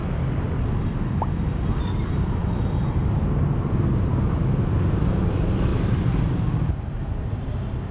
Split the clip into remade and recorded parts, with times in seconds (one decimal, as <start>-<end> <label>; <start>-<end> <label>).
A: 0.0-5.7 recorded; 5.7-7.5 remade; 7.5-7.9 recorded